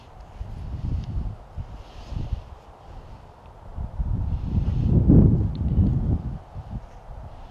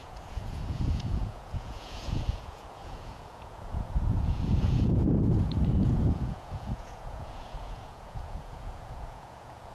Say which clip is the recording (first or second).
first